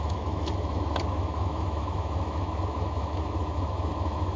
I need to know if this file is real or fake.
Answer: fake